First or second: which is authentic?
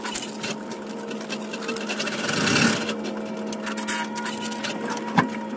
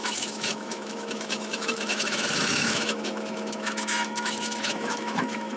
first